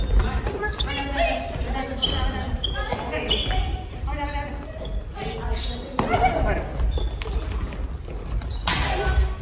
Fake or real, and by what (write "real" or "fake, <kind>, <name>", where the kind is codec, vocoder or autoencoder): real